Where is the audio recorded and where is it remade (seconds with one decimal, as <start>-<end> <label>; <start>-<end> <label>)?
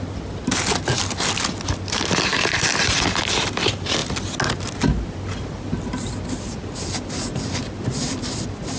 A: 0.0-8.8 recorded